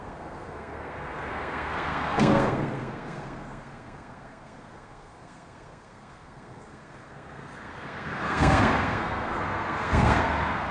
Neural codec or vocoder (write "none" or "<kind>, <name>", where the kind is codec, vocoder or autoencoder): codec, SNAC